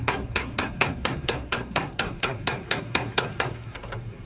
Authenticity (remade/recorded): remade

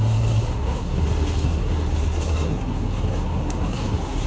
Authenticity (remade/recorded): remade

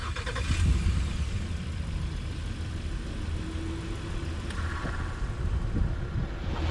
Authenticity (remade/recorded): recorded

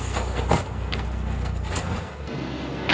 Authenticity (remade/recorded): remade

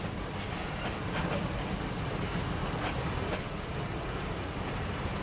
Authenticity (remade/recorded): recorded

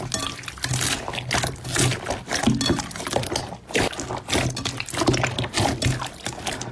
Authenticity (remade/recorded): recorded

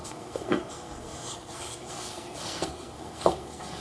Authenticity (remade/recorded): remade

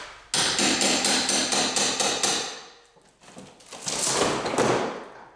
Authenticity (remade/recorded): recorded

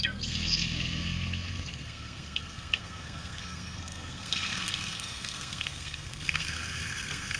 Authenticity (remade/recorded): remade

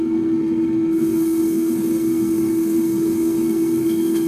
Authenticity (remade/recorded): remade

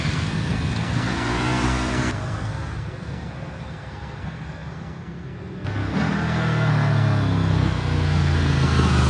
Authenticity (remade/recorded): remade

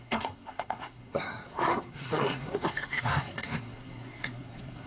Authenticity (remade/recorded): remade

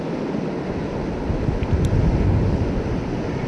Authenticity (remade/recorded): recorded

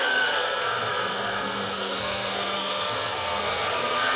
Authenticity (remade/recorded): remade